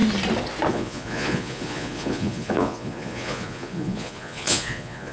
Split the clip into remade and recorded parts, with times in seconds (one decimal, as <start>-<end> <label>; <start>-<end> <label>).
0.0-0.7 recorded; 0.7-5.1 remade